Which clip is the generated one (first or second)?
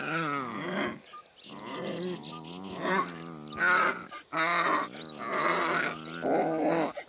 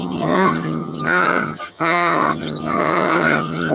second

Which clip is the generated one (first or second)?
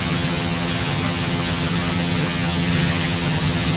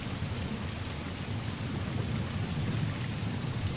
first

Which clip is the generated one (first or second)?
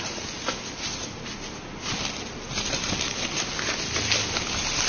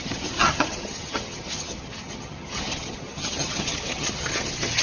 second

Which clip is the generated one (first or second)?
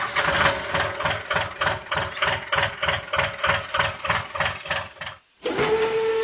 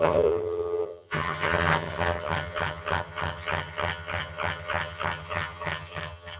second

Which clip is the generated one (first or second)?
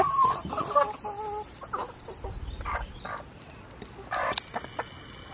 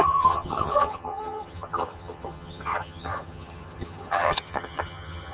second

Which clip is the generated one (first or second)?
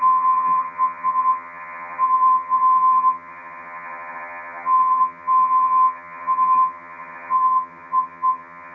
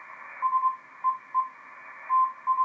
first